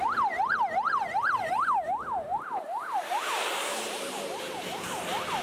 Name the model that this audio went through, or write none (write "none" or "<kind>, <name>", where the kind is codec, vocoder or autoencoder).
vocoder, BigVGAN v2